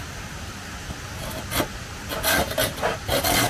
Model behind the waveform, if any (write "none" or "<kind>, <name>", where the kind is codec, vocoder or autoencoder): none